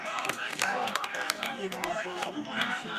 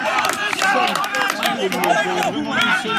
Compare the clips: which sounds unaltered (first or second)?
second